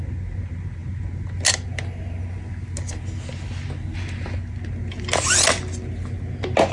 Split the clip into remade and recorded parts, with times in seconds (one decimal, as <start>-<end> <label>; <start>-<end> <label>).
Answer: 0.0-6.7 recorded